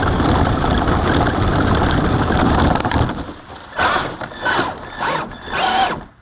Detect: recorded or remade recorded